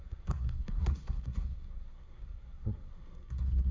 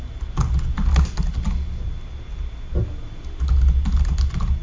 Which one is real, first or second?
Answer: second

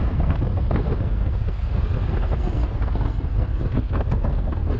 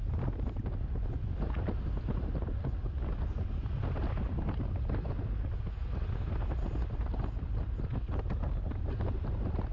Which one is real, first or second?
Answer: second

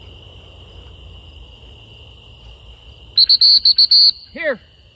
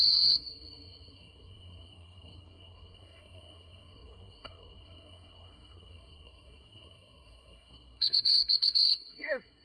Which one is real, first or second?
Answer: first